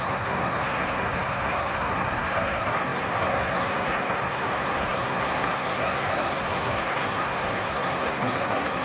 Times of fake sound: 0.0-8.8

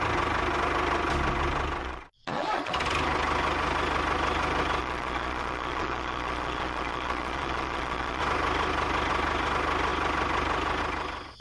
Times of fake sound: 1.8-2.7; 4.8-8.2

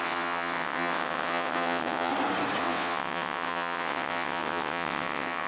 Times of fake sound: 0.0-2.1; 2.6-5.5